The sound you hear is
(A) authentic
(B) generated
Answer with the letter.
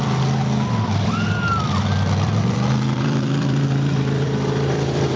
B